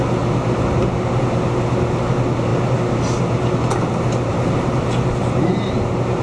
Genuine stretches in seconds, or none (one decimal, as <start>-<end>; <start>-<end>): 0.0-4.3; 4.8-6.2